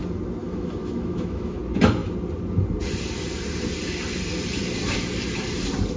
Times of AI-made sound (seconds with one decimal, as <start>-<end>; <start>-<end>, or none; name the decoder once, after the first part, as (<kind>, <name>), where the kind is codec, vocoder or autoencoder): 0.4-1.6 (autoencoder, DAC-VAE)